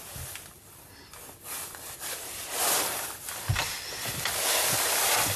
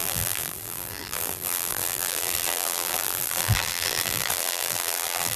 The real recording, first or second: first